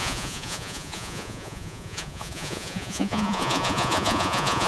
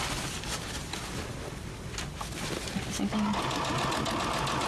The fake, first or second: first